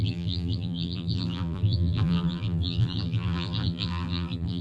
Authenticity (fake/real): fake